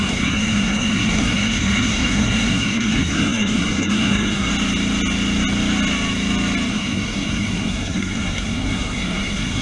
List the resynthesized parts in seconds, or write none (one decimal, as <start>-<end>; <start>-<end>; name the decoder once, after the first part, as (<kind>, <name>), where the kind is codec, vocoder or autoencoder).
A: 0.0-4.5 (codec, SNAC); 6.7-9.6